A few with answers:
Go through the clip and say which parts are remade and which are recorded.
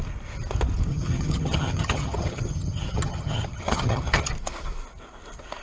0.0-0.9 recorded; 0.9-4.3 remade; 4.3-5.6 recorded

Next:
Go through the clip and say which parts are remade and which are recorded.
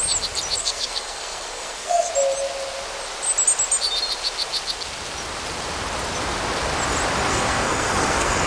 0.0-0.6 recorded; 0.6-2.1 remade; 2.1-7.3 recorded; 7.3-8.5 remade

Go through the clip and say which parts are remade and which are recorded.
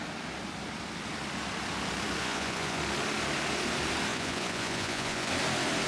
0.0-2.2 recorded; 2.2-2.8 remade; 2.8-4.1 recorded; 4.1-5.3 remade; 5.3-5.9 recorded